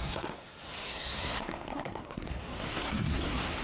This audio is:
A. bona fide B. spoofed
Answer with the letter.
B